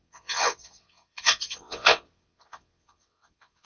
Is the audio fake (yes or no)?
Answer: yes